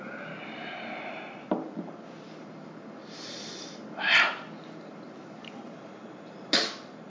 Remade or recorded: recorded